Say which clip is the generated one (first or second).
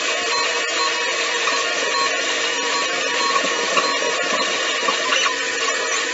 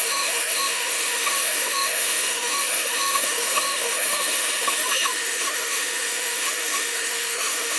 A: second